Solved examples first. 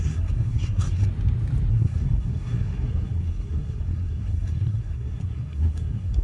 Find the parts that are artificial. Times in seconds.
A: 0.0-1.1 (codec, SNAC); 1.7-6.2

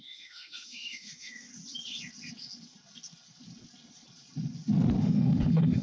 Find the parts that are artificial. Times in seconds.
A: 0.0-1.5 (autoencoder, DAC-VAE); 5.0-5.8